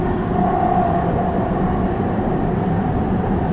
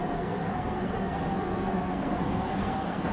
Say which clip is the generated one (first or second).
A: second